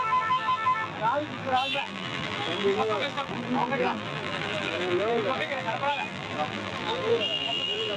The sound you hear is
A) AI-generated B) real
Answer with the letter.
A